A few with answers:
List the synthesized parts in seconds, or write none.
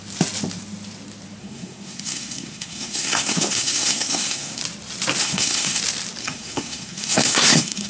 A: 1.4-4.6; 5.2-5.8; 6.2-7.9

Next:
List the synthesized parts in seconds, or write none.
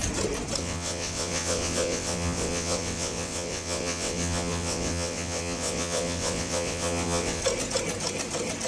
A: 0.6-7.4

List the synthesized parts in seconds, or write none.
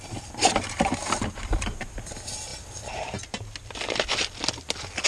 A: none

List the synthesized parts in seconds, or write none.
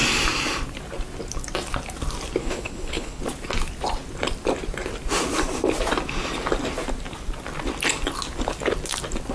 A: 2.4-3.2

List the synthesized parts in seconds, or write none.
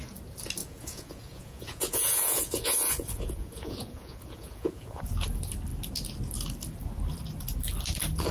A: 0.6-5.1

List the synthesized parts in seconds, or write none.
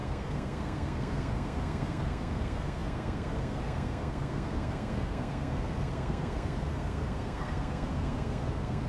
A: 0.0-8.9